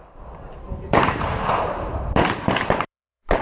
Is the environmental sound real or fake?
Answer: fake